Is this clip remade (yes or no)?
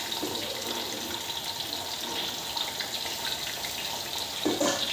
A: no